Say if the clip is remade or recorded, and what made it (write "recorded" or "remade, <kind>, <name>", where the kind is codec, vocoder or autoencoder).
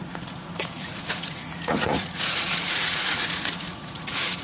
remade, vocoder, Vocos